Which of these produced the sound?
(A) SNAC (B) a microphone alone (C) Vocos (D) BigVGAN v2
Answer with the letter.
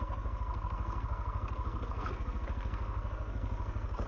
A